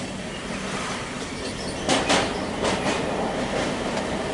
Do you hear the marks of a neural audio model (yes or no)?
yes